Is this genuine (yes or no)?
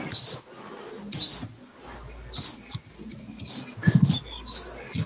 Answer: yes